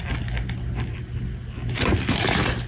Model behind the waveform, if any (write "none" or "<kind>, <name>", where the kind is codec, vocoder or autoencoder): none